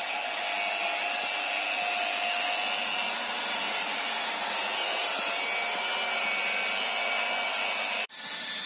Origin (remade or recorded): recorded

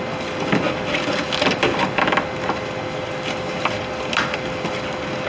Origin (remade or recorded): recorded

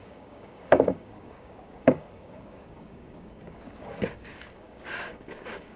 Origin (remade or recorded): remade